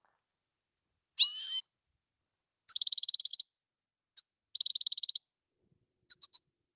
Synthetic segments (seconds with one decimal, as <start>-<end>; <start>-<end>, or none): none